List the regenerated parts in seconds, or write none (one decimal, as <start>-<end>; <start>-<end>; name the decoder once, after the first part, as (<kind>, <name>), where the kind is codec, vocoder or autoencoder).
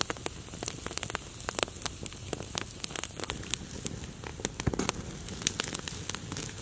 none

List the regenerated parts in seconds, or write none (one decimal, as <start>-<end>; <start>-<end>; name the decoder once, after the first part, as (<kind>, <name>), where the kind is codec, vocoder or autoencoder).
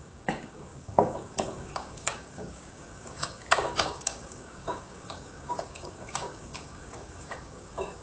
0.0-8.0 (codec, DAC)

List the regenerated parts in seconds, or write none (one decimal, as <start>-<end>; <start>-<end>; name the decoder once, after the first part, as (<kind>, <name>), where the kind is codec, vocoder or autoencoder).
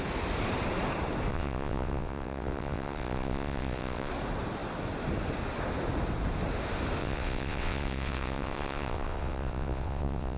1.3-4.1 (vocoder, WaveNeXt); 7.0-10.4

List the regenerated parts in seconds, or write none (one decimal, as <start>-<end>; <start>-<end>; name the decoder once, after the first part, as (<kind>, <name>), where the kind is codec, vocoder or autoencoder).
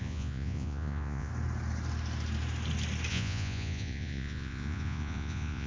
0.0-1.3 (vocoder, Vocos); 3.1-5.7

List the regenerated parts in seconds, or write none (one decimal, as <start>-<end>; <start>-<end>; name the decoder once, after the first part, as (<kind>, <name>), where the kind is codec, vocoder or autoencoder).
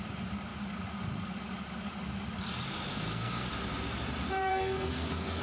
2.9-3.5 (codec, SNAC); 4.5-5.4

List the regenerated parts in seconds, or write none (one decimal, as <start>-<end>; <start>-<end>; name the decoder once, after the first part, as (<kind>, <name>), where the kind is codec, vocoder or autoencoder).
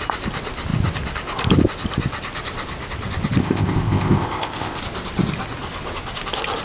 3.4-4.8 (codec, ZipCodec)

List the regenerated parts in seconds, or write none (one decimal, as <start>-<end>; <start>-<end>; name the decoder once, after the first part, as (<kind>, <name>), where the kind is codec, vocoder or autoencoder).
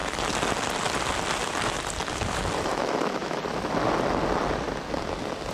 2.7-3.4 (autoencoder, DAC-VAE)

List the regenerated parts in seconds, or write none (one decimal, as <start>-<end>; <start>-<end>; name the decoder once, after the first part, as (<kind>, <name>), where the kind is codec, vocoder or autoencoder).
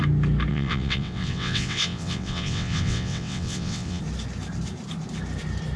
0.5-4.0 (vocoder, WaveNeXt)